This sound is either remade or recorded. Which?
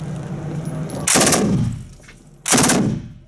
recorded